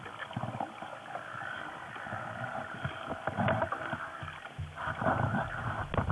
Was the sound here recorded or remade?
recorded